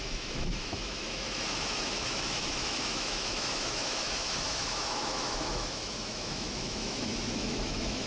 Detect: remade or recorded remade